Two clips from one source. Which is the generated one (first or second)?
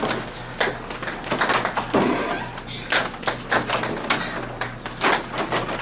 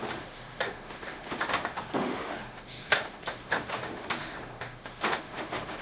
second